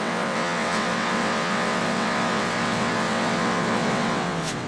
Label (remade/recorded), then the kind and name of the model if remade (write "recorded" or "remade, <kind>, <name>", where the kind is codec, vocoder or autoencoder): remade, vocoder, WaveNeXt